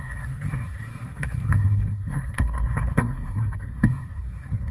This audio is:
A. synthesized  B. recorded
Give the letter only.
A